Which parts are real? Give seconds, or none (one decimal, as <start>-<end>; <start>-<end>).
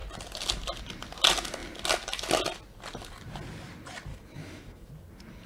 0.0-4.1; 4.9-5.5